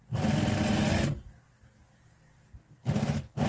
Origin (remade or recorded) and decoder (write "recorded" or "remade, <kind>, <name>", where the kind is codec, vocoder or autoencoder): recorded